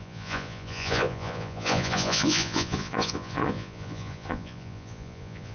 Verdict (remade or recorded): remade